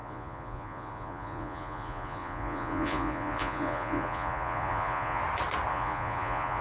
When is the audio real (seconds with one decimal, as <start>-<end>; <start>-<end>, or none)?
5.2-5.7